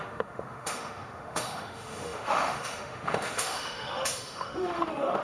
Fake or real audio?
fake